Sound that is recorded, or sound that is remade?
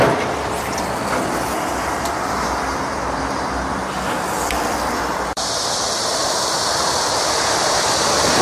remade